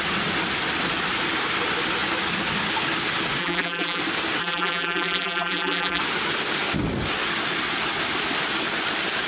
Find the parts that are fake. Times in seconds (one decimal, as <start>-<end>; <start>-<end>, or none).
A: 3.4-4.0; 4.4-6.0